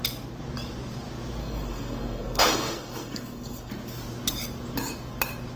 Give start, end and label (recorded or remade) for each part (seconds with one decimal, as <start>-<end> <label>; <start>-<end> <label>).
0.0-1.4 recorded; 1.4-3.7 remade; 3.7-5.6 recorded